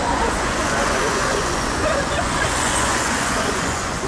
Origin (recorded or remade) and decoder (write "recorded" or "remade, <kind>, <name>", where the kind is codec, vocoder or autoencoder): remade, vocoder, Vocos